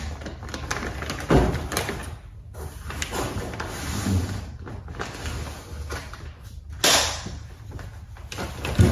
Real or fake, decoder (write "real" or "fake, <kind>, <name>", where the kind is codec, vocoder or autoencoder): real